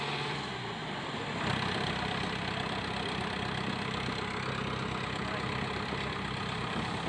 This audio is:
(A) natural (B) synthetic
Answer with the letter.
A